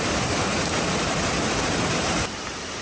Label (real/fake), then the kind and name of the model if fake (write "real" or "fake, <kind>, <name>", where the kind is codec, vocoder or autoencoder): real